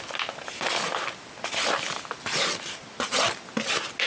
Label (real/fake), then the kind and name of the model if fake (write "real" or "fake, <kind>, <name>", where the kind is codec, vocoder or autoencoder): real